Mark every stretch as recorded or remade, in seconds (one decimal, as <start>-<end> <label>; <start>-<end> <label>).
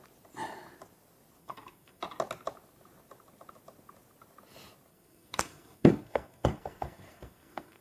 0.0-1.4 recorded; 1.4-2.0 remade; 2.0-4.9 recorded; 4.9-7.8 remade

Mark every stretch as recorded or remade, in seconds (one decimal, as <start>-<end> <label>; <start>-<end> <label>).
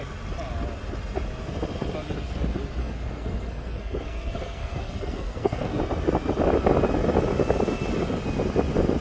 0.0-2.8 recorded; 2.8-5.8 remade; 5.8-9.0 recorded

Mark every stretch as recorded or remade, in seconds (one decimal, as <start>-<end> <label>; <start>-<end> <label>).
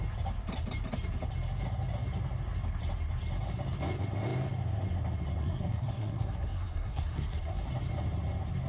0.0-5.4 recorded; 5.4-7.7 remade; 7.7-8.7 recorded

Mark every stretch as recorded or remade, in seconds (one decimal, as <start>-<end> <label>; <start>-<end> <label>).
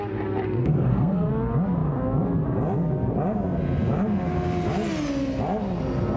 0.0-0.6 recorded; 0.6-1.3 remade; 1.3-6.2 recorded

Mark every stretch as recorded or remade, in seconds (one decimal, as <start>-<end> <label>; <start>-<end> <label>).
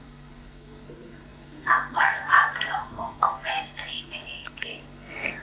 0.0-5.4 remade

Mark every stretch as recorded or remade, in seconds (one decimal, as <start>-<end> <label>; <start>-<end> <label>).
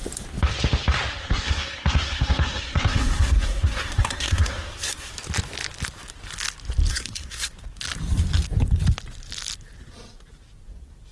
0.0-1.2 recorded; 1.2-5.1 remade; 5.1-6.9 recorded; 6.9-7.5 remade; 7.5-11.1 recorded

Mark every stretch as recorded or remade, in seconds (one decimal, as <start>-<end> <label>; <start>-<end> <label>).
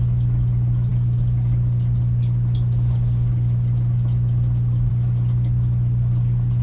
0.0-6.6 recorded